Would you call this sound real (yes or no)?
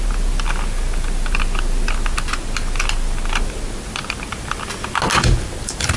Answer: yes